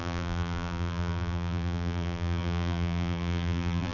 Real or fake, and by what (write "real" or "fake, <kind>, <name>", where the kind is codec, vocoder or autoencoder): fake, vocoder, BigVGAN v2